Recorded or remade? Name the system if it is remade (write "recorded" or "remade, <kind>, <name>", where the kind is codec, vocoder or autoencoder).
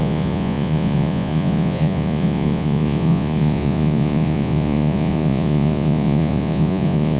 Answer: remade, vocoder, Vocos